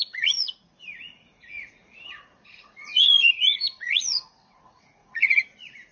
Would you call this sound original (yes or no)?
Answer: no